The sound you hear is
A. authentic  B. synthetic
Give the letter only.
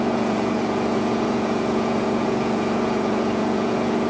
B